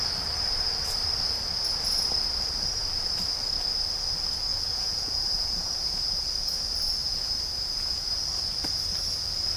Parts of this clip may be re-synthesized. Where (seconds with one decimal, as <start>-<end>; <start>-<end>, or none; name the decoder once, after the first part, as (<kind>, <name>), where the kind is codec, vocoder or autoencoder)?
4.5-6.2 (vocoder, Vocos); 7.0-8.2